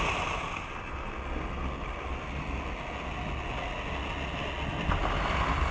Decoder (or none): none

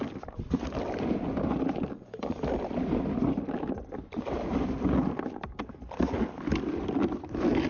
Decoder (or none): none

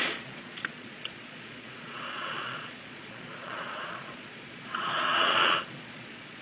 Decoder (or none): vocoder, Vocos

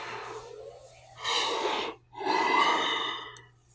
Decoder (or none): none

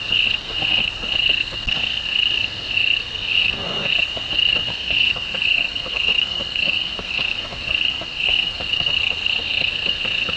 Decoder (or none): codec, SNAC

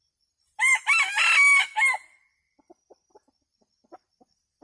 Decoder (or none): none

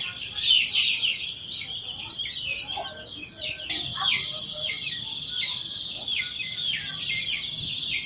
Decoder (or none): none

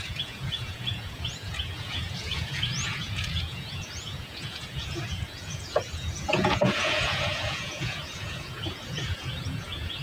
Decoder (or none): vocoder, Vocos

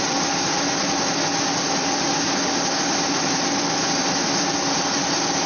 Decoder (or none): none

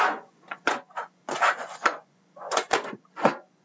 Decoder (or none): vocoder, Vocos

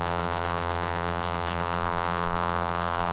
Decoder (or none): vocoder, BigVGAN v2